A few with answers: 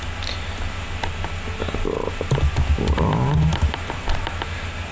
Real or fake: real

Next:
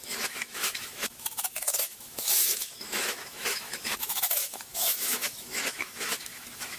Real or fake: fake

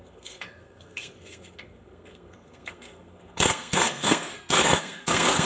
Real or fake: fake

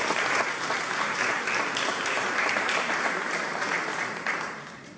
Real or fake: fake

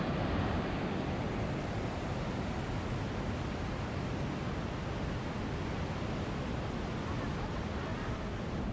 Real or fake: real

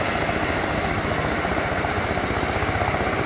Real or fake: real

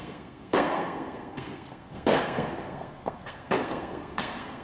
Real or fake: fake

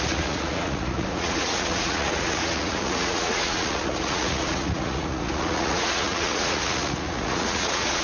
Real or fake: fake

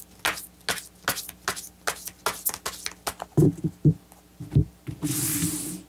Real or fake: real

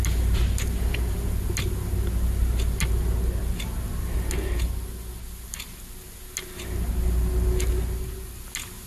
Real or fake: real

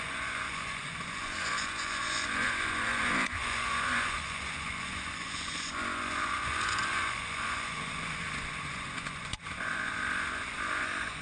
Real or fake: fake